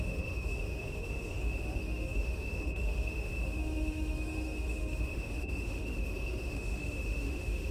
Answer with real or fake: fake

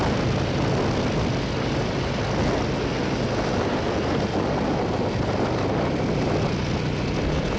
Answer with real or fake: real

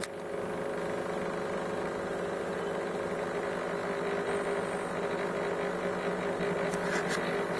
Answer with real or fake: real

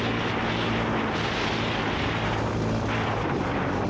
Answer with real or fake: real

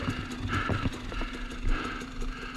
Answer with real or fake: real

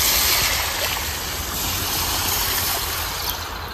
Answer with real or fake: real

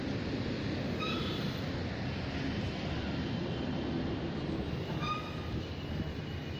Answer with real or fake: real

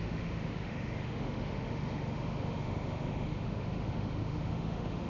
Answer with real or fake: fake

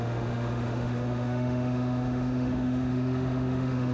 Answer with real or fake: fake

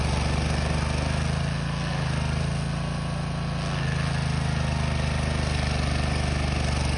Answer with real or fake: real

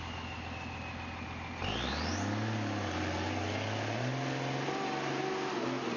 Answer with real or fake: real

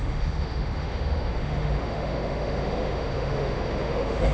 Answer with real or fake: fake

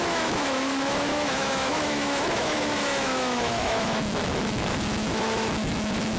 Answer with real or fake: fake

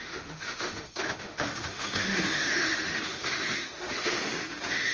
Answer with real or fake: fake